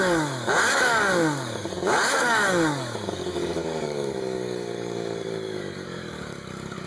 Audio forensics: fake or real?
fake